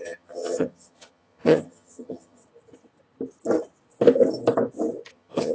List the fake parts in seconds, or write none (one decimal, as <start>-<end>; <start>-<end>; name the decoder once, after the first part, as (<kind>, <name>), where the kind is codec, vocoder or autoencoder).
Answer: 0.0-2.4 (vocoder, HiFi-GAN); 5.1-5.5